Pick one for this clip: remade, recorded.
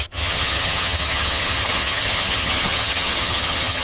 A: remade